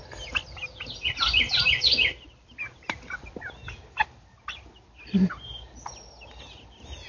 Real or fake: real